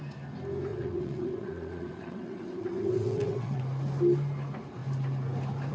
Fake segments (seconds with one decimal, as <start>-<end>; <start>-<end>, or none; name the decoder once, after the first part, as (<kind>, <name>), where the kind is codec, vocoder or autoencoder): 0.7-3.6 (vocoder, WaveNeXt)